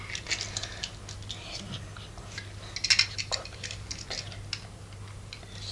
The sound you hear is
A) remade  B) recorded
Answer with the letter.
B